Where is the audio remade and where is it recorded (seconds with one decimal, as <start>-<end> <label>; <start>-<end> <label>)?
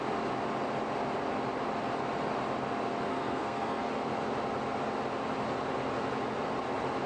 0.0-3.1 recorded; 3.1-3.9 remade; 3.9-7.1 recorded